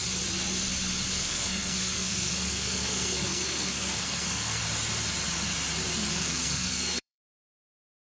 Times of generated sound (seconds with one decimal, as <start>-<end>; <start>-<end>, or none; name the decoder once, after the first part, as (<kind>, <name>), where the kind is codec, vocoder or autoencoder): 1.1-4.6 (codec, SNAC); 6.1-8.1